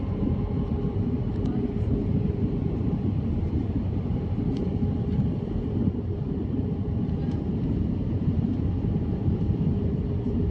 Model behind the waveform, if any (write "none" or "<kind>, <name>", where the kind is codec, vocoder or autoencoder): vocoder, BigVGAN v2